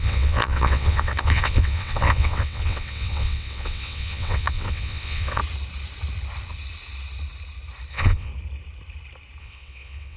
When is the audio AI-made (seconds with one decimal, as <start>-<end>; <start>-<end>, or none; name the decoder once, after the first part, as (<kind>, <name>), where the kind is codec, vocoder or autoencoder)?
0.0-5.4 (vocoder, WaveNeXt); 7.9-8.3; 9.4-10.2